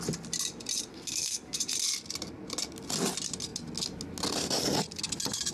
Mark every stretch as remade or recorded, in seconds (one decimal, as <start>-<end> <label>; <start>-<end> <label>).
0.0-0.9 recorded; 0.9-1.6 remade; 1.6-5.5 recorded